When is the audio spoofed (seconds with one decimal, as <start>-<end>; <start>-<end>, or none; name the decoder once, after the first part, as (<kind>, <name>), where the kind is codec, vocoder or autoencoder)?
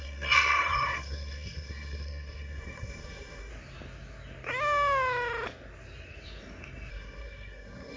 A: 0.0-3.5 (codec, SNAC); 6.9-8.0